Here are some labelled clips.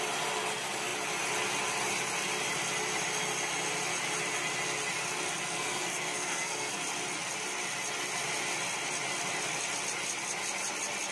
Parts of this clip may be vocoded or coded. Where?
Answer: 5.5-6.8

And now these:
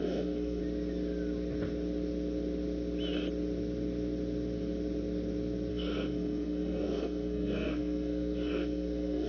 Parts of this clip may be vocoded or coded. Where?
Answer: 0.0-0.6; 5.7-9.3

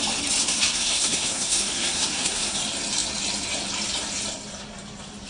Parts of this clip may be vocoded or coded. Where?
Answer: 0.4-2.6

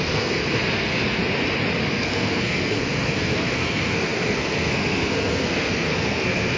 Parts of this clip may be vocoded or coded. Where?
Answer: 0.0-1.2; 1.9-6.6